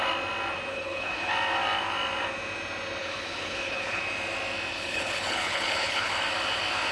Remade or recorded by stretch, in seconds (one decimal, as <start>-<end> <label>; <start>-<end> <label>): 0.0-0.7 recorded; 0.7-1.3 remade; 1.3-3.0 recorded; 3.0-4.0 remade; 4.0-4.7 recorded; 4.7-6.1 remade; 6.1-6.9 recorded